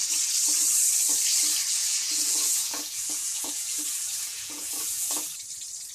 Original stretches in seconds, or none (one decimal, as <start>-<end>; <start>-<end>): 0.0-1.8; 5.3-5.9